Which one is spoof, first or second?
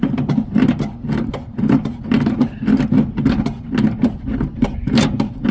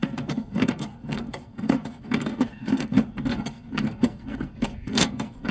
second